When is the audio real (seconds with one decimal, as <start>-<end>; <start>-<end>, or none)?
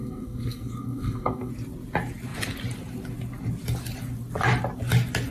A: 1.5-5.3